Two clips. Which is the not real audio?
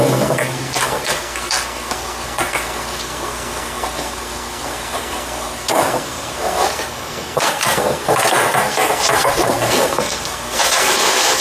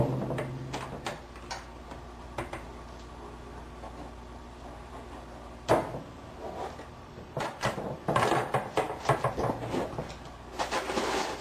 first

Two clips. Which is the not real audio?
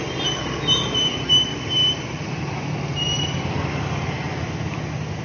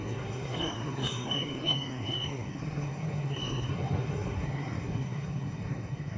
second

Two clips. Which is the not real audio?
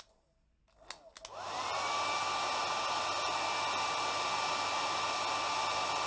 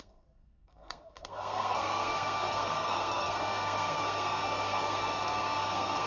second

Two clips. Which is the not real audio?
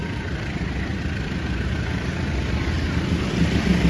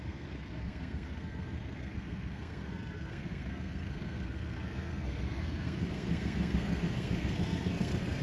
second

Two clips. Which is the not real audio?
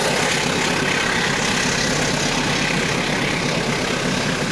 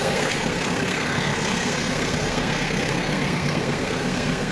second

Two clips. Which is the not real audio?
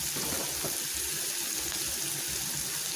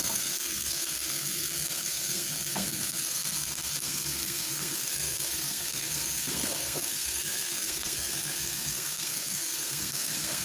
second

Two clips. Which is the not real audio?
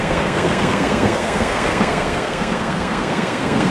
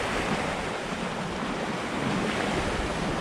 first